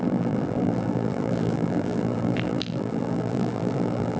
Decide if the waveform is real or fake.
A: fake